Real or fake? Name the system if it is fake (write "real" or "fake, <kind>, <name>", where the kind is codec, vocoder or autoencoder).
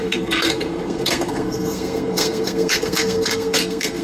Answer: fake, codec, SNAC